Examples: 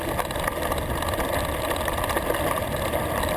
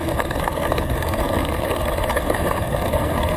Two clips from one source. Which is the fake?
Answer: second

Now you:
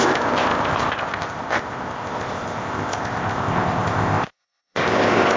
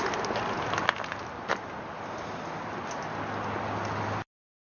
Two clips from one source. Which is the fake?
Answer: first